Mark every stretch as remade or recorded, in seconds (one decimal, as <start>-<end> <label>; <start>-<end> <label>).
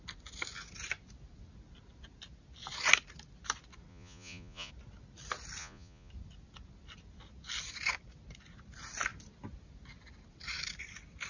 0.0-3.9 recorded; 3.9-4.7 remade; 4.7-5.6 recorded; 5.6-6.1 remade; 6.1-11.3 recorded